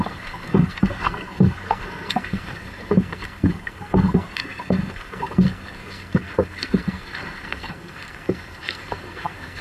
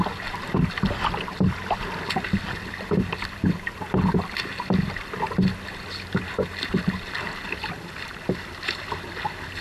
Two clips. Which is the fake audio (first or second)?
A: first